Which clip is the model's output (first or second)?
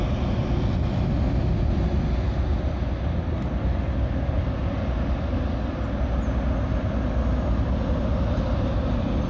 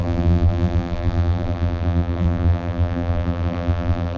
second